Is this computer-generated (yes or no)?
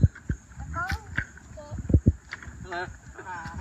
no